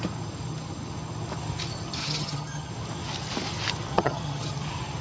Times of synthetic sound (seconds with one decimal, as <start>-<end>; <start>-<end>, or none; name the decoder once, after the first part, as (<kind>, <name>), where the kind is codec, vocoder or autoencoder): 2.0-2.7 (vocoder, HiFi-GAN); 3.9-4.5